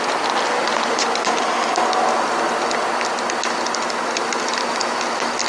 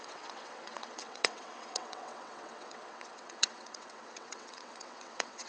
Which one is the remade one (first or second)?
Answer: second